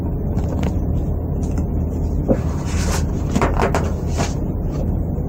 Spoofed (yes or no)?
no